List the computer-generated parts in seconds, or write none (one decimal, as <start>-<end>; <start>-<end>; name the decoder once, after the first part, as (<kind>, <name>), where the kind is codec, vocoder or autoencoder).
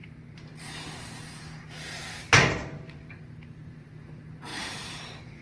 0.0-5.4 (vocoder, BigVGAN v2)